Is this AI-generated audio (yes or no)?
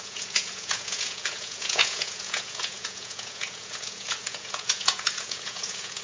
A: yes